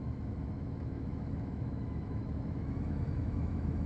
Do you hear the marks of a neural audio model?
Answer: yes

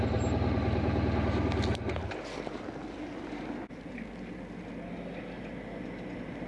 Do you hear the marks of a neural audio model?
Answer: no